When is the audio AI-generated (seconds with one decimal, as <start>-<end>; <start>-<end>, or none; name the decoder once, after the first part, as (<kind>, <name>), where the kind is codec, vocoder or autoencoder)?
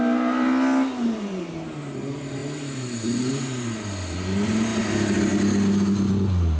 none